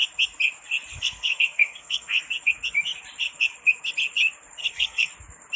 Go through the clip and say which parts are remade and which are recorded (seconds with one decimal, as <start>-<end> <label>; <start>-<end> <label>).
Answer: 0.0-0.9 recorded; 0.9-2.2 remade; 2.2-4.6 recorded; 4.6-5.1 remade; 5.1-5.6 recorded